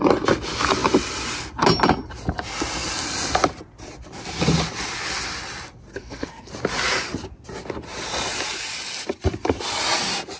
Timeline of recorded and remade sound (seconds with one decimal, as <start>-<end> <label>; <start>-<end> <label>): 0.0-5.9 recorded; 5.9-6.5 remade; 6.5-10.4 recorded